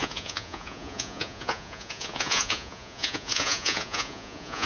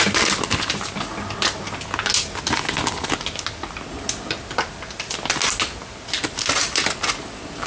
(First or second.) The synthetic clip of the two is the first